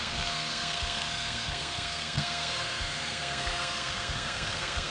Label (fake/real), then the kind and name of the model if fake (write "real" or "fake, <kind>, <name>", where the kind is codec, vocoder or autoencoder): fake, codec, SNAC